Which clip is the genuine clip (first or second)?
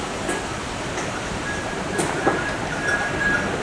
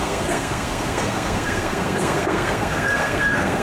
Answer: first